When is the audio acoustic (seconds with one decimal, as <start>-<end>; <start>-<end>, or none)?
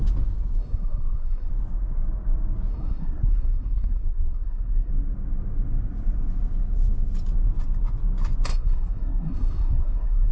0.0-0.6; 1.5-2.7; 4.9-8.5